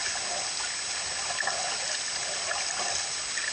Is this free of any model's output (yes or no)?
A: yes